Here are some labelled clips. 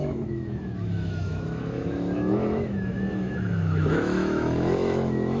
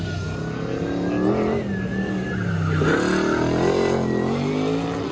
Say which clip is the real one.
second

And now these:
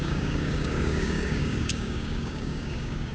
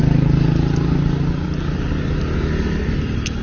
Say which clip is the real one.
second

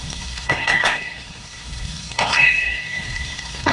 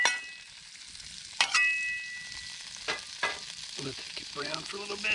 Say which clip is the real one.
second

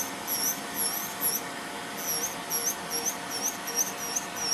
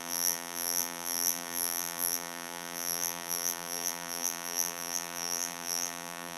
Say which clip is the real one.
first